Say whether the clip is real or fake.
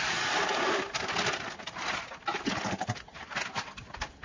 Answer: real